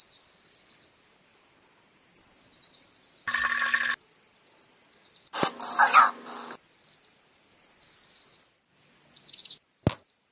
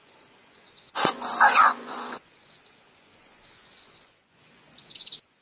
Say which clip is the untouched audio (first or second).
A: first